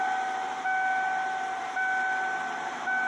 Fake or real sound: real